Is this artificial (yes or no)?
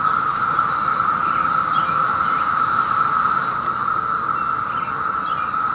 no